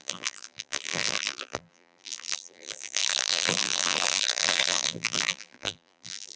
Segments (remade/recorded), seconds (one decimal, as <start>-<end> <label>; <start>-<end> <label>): 0.0-6.4 remade